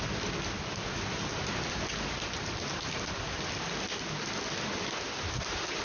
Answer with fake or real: real